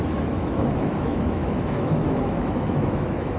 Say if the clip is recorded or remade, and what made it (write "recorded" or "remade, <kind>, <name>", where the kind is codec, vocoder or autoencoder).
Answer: remade, autoencoder, DAC-VAE